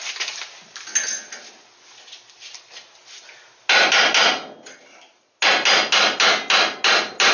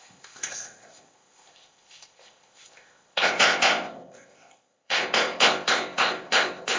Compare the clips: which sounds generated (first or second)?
second